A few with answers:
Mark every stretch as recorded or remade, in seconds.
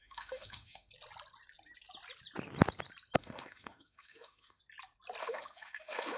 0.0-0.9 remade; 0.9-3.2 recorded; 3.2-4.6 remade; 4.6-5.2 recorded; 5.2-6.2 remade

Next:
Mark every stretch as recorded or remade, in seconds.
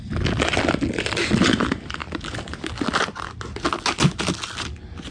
0.0-5.1 recorded